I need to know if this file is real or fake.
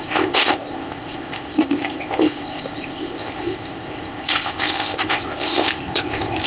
fake